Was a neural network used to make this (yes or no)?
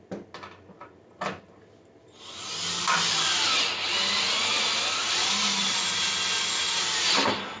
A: no